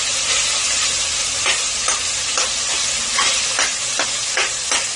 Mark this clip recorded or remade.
recorded